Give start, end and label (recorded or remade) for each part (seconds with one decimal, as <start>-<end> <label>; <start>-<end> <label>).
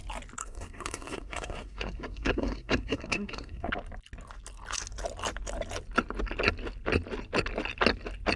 0.0-0.4 recorded; 0.4-3.7 remade; 3.7-8.4 recorded